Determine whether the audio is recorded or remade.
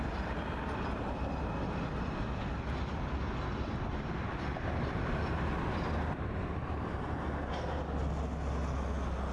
recorded